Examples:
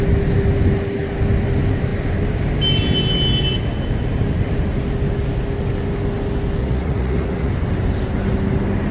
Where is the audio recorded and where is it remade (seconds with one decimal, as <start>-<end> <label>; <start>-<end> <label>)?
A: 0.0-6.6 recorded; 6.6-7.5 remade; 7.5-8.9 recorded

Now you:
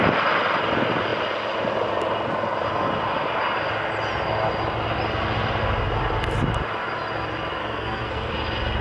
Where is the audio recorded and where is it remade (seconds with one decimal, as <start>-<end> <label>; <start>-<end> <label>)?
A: 0.0-7.6 recorded; 7.6-8.3 remade; 8.3-8.8 recorded

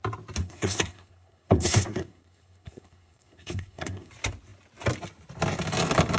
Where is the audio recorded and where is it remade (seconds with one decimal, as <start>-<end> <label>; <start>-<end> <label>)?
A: 0.0-0.4 recorded; 0.4-4.1 remade; 4.1-6.2 recorded

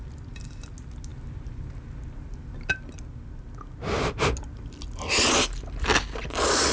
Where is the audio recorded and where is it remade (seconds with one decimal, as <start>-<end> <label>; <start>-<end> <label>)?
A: 0.0-6.7 recorded